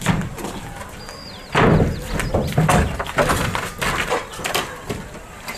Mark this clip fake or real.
real